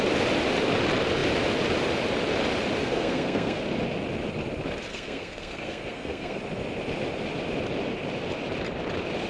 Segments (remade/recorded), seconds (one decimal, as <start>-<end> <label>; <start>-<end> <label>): 0.0-2.8 recorded; 2.8-3.6 remade; 3.6-4.9 recorded; 4.9-6.4 remade; 6.4-9.3 recorded